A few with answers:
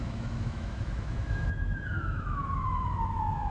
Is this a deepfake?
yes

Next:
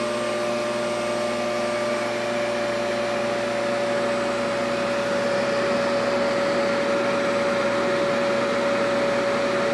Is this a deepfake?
no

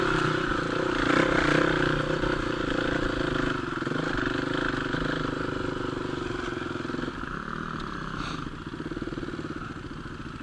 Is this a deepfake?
no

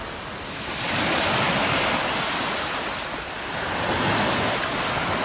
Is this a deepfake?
no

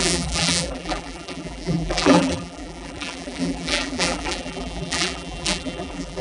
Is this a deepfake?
yes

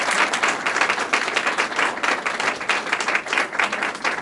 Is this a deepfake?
no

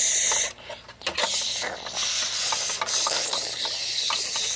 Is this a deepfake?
no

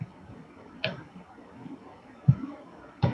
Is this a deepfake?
yes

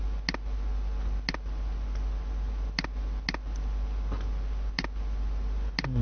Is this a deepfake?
no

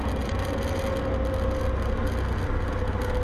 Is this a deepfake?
no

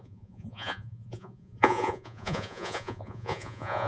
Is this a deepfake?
yes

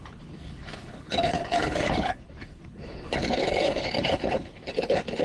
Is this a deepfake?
yes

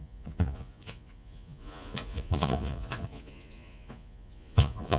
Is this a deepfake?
yes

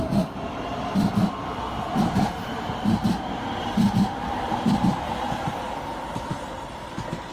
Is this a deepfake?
no